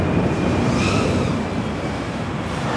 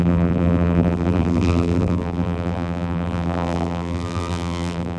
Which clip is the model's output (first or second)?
second